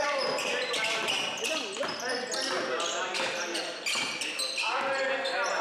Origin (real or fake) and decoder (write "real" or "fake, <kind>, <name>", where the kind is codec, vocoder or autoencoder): real